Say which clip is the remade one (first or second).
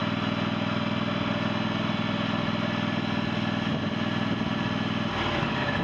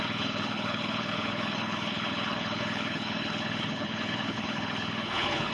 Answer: second